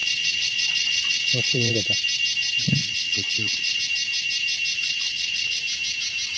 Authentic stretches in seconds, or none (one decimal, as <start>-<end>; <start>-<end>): 1.7-2.8; 3.8-4.8; 5.6-6.4

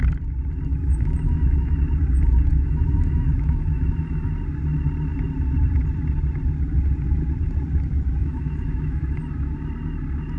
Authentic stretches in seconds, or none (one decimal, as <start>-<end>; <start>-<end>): 0.0-0.7; 1.8-2.5; 4.3-8.2; 9.2-10.4

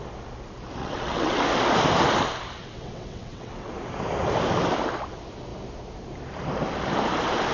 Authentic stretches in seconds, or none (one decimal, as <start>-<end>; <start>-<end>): 0.0-0.8; 1.4-2.6; 3.7-7.5

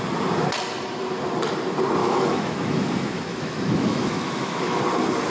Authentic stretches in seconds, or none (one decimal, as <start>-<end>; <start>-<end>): 0.0-2.0; 4.8-5.3

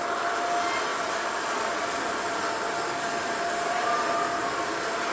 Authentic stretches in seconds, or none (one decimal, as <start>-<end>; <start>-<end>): 0.0-5.1

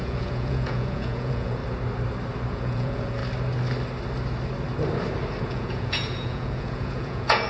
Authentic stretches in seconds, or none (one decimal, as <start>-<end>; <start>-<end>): 1.6-2.5; 3.2-5.4

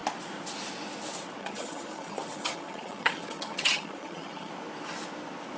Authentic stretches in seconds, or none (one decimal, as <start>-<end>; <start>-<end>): 0.0-1.4; 4.5-5.6